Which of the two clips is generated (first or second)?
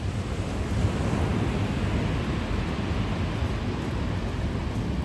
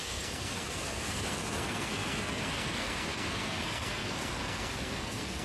second